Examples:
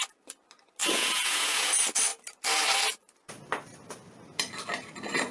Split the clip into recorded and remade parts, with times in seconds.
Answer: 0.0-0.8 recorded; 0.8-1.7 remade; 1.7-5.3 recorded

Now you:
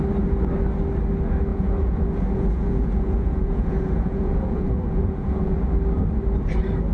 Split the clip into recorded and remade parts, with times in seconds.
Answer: 0.0-1.5 recorded; 1.5-5.6 remade; 5.6-6.9 recorded